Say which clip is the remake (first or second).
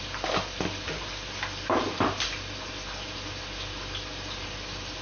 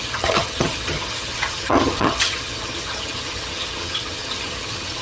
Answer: second